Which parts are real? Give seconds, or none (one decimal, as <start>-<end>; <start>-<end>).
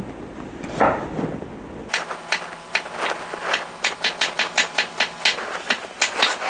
0.0-6.5